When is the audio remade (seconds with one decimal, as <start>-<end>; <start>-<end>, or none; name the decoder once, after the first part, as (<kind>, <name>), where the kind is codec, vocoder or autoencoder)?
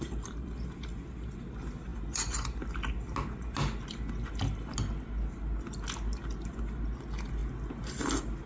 none